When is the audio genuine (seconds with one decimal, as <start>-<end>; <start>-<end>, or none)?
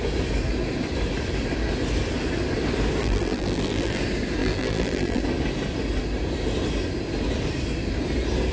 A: 0.0-3.0; 4.0-4.4; 5.2-8.5